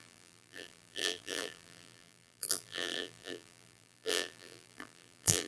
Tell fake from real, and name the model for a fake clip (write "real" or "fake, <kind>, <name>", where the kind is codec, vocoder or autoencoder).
fake, vocoder, BigVGAN v2